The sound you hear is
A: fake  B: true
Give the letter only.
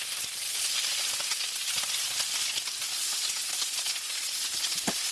B